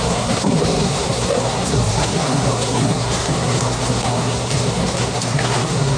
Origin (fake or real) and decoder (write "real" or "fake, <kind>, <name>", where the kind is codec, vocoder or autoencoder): fake, codec, SNAC